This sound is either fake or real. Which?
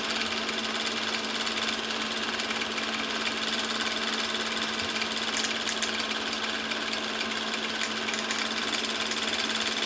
real